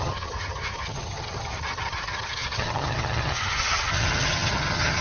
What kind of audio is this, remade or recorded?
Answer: remade